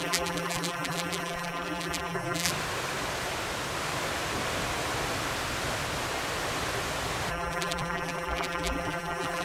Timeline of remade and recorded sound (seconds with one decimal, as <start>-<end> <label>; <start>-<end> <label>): 0.0-2.5 remade; 2.5-7.3 recorded; 7.3-9.4 remade

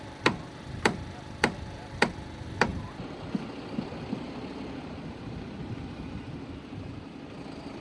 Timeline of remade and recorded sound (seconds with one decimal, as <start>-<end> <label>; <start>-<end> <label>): 0.0-2.7 remade; 2.7-4.8 recorded; 4.8-7.8 remade

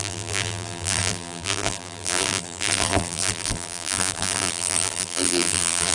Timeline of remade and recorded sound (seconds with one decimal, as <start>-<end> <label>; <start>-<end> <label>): 0.0-5.9 remade

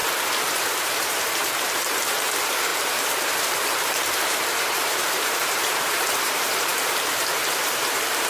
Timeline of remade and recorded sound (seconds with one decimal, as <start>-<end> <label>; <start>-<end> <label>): 0.0-0.8 recorded; 0.8-8.3 remade

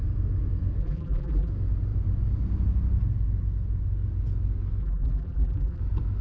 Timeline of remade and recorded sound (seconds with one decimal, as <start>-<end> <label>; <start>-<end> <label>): 0.0-0.8 recorded; 0.8-1.5 remade; 1.5-4.8 recorded; 4.8-5.8 remade; 5.8-6.2 recorded

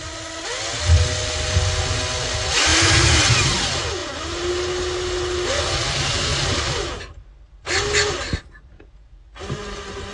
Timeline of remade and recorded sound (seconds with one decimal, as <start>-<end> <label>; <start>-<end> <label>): 0.0-2.7 recorded; 2.7-3.2 remade; 3.2-4.0 recorded; 4.0-4.5 remade; 4.5-6.3 recorded; 6.3-7.0 remade; 7.0-10.1 recorded

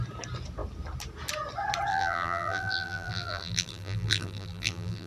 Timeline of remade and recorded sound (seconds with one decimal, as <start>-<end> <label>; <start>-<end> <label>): 0.0-1.9 recorded; 1.9-5.1 remade

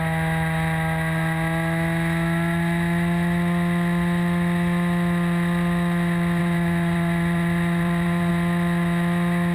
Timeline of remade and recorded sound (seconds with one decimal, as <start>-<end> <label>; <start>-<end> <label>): 0.0-6.4 recorded; 6.4-8.3 remade; 8.3-9.5 recorded